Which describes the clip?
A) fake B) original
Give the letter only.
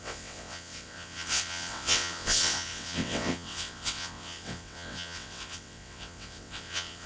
A